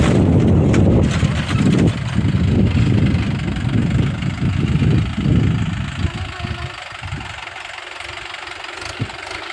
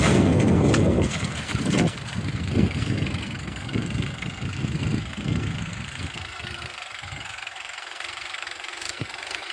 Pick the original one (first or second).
first